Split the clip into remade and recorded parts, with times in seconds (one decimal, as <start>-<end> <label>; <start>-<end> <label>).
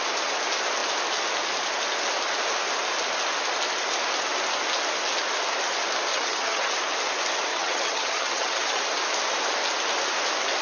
0.0-6.1 recorded; 6.1-6.7 remade; 6.7-7.5 recorded; 7.5-8.8 remade; 8.8-10.6 recorded